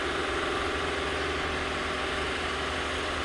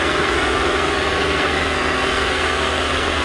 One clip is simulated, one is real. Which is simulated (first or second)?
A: second